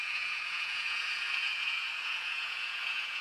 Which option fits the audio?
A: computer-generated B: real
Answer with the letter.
A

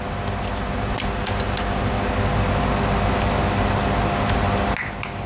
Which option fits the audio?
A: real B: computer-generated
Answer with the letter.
A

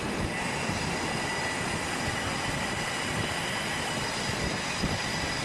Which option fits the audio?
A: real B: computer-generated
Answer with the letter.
A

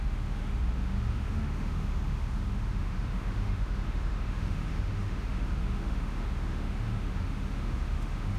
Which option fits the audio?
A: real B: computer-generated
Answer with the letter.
B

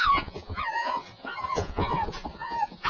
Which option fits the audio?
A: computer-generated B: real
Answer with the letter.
A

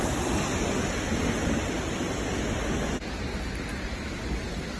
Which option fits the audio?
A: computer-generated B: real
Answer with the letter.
B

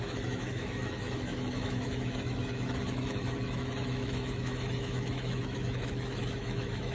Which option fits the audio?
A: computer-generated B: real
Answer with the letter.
A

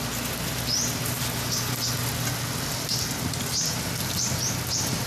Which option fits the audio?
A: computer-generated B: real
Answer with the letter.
B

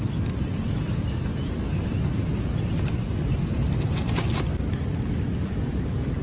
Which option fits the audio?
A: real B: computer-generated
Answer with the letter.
A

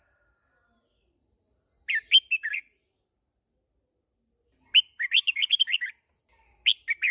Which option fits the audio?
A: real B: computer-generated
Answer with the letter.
A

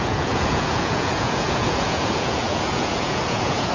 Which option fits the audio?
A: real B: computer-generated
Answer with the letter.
B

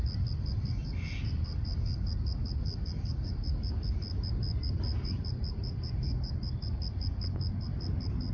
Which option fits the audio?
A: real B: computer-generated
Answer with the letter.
A